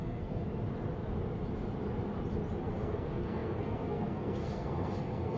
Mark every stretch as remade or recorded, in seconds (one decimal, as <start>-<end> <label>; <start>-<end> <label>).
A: 0.0-0.4 remade; 0.4-2.6 recorded; 2.6-5.4 remade